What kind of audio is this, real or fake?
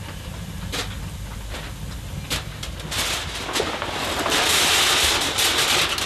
real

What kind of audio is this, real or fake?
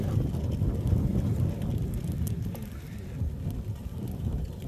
real